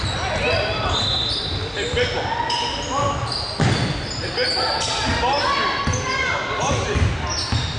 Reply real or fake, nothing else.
real